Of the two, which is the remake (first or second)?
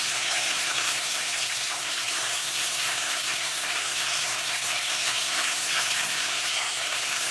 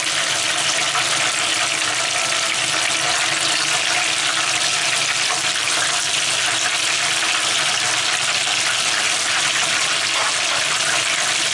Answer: first